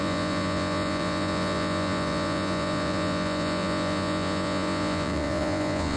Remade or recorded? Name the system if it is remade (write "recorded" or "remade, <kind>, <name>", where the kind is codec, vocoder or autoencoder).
remade, vocoder, Vocos